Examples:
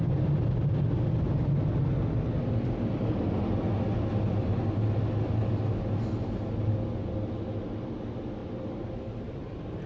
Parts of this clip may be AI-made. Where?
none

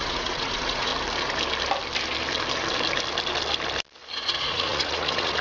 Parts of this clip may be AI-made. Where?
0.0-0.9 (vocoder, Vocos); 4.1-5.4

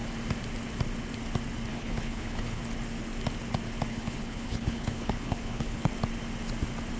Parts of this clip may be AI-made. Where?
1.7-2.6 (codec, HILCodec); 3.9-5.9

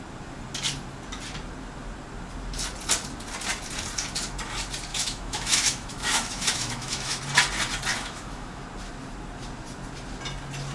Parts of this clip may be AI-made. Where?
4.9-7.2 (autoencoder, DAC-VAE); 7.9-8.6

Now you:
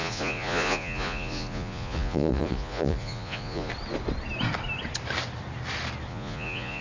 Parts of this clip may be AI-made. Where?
0.0-3.7 (vocoder, Vocos); 6.1-6.8

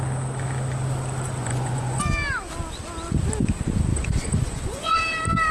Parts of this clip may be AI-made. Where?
1.4-2.0 (vocoder, Vocos); 3.9-5.0